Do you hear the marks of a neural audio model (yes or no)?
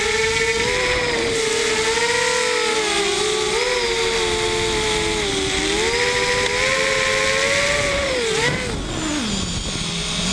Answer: no